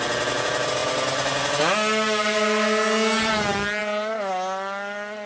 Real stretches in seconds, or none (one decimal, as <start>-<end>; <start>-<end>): 0.0-5.3